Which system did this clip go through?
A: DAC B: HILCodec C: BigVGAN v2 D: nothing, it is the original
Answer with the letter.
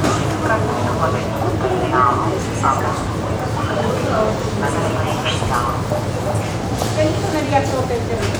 D